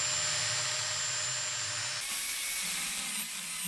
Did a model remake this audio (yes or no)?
no